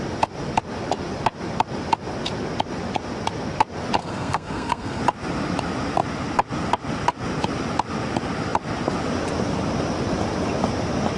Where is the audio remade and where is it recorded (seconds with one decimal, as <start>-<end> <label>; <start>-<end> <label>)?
0.0-4.0 recorded; 4.0-5.0 remade; 5.0-11.2 recorded